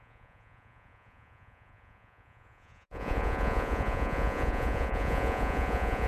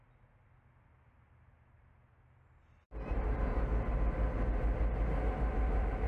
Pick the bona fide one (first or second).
second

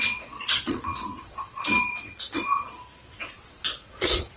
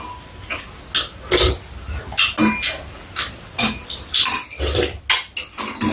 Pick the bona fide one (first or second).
second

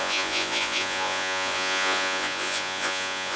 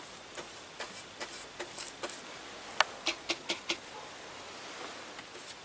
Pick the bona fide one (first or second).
second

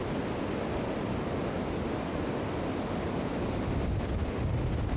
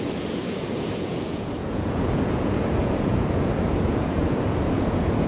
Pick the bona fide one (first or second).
first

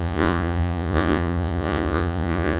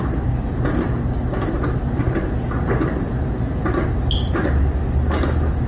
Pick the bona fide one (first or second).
second